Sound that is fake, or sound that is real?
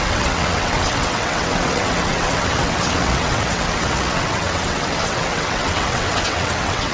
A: fake